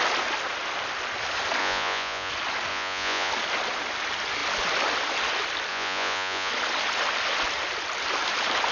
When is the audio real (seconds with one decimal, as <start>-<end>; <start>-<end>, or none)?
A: 0.0-1.6; 2.3-2.7; 3.3-5.7; 6.5-8.7